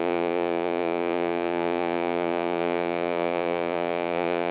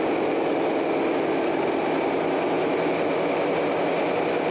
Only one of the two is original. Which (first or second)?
second